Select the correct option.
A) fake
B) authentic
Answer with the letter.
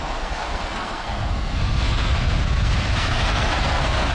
A